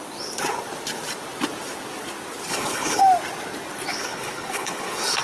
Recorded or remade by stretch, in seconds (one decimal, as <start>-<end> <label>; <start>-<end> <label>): 0.0-2.5 recorded; 2.5-3.0 remade; 3.0-3.9 recorded; 3.9-5.2 remade